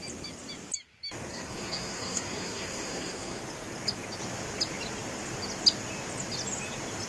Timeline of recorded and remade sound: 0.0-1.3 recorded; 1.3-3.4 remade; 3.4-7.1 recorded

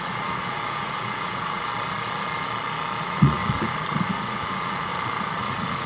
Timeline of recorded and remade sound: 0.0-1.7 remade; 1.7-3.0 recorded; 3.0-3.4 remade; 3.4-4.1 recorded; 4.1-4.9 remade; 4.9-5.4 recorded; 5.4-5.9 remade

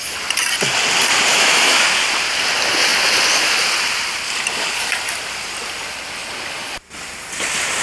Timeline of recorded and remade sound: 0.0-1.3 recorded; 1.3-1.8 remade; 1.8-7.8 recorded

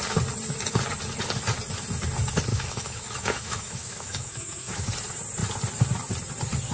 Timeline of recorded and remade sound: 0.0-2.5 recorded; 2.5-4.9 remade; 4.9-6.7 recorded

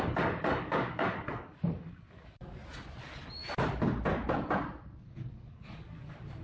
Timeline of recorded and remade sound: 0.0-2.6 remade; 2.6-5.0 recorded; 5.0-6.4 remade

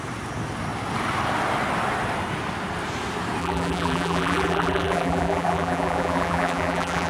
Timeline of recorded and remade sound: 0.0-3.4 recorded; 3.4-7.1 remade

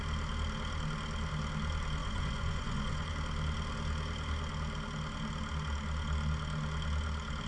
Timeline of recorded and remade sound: 0.0-2.0 recorded; 2.0-3.1 remade; 3.1-7.5 recorded

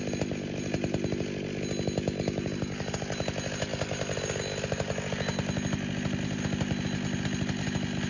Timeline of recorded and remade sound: 0.0-3.7 recorded; 3.7-4.2 remade; 4.2-8.1 recorded